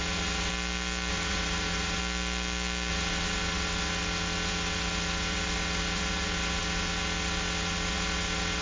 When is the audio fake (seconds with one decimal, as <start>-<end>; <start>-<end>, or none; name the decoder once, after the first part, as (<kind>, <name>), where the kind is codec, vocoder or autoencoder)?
0.0-0.5 (vocoder, WaveNeXt); 1.1-2.0; 2.9-8.6